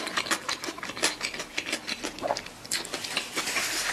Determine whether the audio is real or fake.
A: real